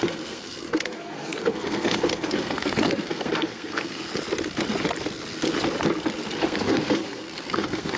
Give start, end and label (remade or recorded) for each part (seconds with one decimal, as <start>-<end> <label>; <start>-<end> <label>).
0.0-4.1 remade; 4.1-6.4 recorded; 6.4-8.0 remade